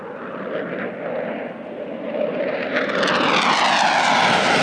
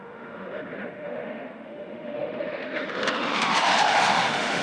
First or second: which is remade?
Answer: second